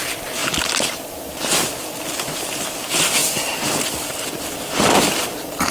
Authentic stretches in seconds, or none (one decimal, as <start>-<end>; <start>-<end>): 0.0-5.7